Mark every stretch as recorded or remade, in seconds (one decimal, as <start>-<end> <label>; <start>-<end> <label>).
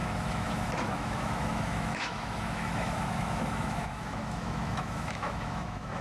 0.0-6.0 remade